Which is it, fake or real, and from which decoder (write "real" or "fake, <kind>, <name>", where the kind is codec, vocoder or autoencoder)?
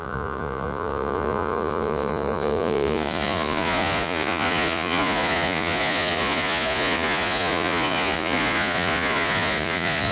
fake, vocoder, Vocos